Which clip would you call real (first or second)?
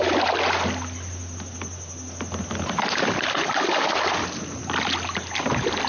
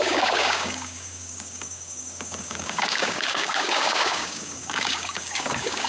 first